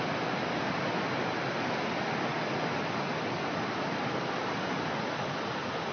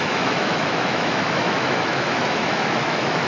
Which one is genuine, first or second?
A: first